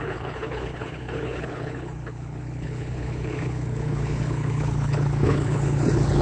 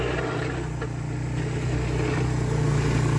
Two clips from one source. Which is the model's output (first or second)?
first